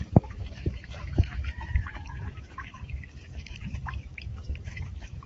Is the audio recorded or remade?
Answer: remade